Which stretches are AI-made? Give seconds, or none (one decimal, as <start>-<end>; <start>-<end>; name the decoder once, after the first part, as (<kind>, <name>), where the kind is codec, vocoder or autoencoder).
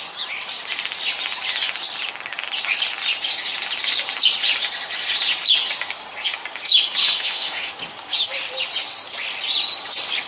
7.0-7.7 (autoencoder, DAC-VAE)